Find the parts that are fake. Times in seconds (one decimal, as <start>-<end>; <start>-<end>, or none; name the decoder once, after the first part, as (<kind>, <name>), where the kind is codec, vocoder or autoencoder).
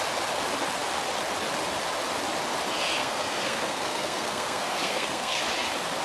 3.0-5.4 (codec, SNAC)